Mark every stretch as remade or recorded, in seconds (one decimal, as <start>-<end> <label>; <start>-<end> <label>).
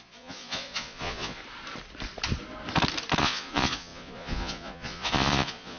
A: 0.0-1.4 remade; 1.4-3.2 recorded; 3.2-5.8 remade